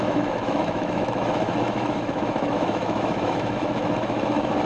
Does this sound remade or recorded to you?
remade